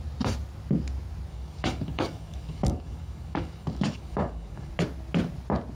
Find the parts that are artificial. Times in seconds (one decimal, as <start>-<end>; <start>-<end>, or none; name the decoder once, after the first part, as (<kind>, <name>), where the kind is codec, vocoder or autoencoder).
1.3-4.7 (codec, DAC)